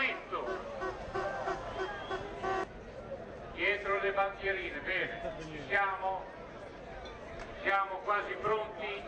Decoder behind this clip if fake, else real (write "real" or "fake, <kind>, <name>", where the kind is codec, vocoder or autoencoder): real